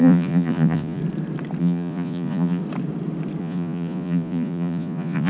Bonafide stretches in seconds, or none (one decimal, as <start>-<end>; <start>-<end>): 1.0-1.6; 2.6-3.4